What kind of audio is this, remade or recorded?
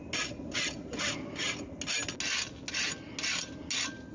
recorded